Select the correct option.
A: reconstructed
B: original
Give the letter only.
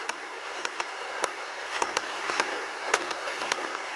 A